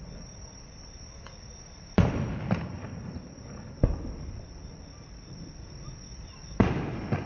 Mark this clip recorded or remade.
recorded